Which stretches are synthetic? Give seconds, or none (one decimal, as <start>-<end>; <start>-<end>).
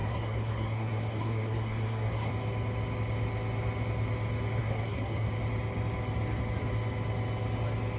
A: 0.0-2.3; 4.6-5.3